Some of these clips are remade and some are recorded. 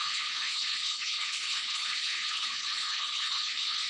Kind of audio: remade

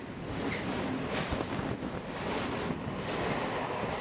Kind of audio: recorded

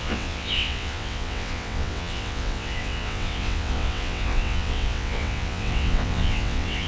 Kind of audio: remade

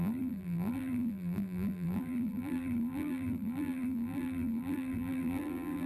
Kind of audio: remade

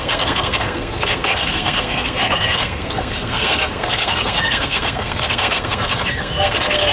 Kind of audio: remade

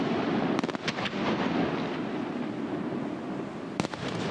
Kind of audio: recorded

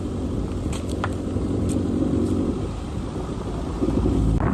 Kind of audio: recorded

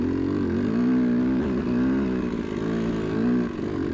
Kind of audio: recorded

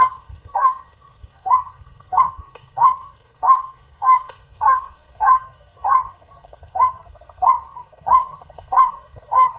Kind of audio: remade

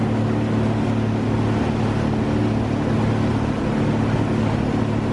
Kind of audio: recorded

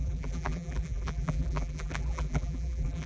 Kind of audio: remade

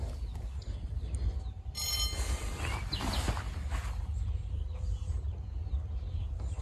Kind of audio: recorded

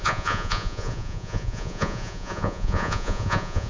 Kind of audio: remade